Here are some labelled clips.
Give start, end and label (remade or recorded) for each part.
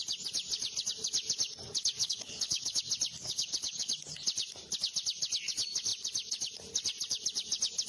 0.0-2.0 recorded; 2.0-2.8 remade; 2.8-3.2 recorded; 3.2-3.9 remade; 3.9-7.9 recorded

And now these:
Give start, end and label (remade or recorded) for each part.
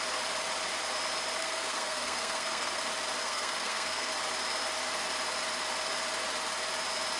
0.0-1.4 recorded; 1.4-2.8 remade; 2.8-3.2 recorded; 3.2-4.1 remade; 4.1-7.2 recorded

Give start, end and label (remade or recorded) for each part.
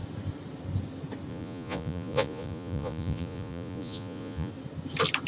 0.0-1.3 recorded; 1.3-4.5 remade; 4.5-5.3 recorded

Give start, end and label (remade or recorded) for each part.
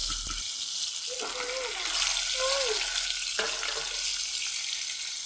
0.0-0.6 remade; 0.6-4.1 recorded; 4.1-5.3 remade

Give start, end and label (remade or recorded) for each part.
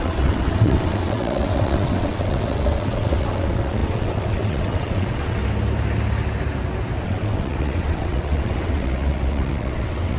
0.0-5.4 remade; 5.4-7.0 recorded; 7.0-10.2 remade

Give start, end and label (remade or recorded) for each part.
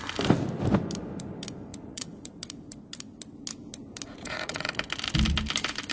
0.0-1.7 recorded; 1.7-2.3 remade; 2.3-4.1 recorded; 4.1-4.7 remade; 4.7-5.9 recorded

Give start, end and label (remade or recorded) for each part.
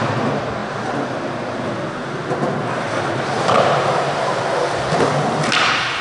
0.0-6.0 recorded